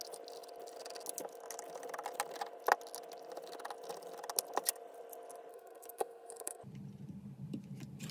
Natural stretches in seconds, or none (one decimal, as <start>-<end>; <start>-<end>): 0.0-5.5; 6.6-8.1